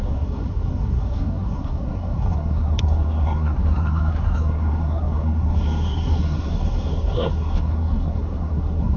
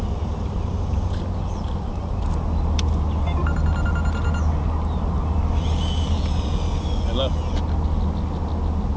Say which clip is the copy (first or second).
first